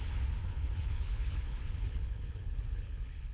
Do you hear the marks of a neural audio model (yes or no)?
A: yes